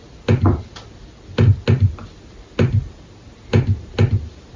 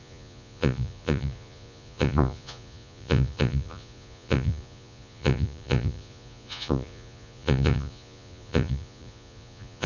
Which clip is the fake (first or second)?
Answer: second